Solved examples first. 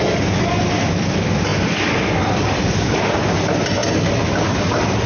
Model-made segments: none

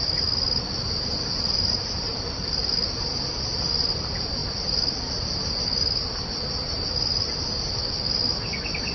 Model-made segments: none

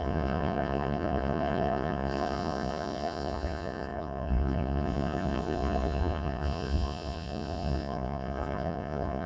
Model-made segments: 0.0-9.3 (vocoder, Vocos)

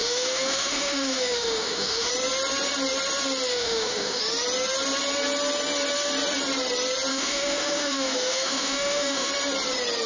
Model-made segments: 0.0-2.1 (autoencoder, DAC-VAE); 3.5-4.2; 7.1-9.3

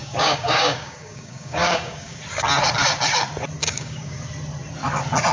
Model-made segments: 0.0-2.2 (codec, DAC); 3.6-4.2